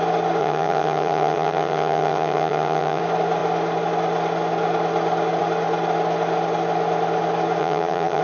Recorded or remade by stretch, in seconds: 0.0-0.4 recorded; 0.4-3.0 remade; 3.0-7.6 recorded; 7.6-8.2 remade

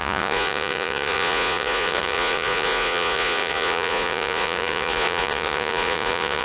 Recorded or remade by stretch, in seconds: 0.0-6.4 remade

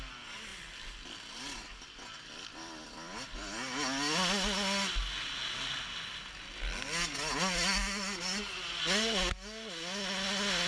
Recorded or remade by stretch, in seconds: 0.0-10.7 recorded